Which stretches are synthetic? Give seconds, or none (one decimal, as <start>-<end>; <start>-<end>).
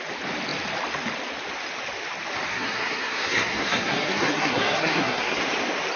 2.5-5.4